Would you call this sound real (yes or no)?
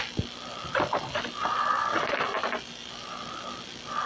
yes